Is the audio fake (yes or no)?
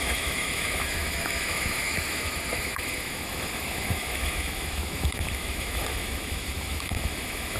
yes